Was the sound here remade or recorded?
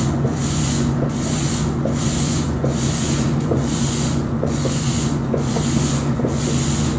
remade